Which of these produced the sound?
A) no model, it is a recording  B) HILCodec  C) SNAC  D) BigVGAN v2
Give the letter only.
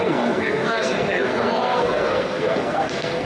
C